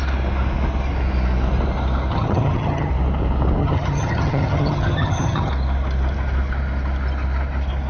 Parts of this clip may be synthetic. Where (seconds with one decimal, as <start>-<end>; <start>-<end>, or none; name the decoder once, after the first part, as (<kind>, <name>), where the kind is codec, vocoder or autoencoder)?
2.1-2.9 (vocoder, HiFi-GAN); 3.6-5.5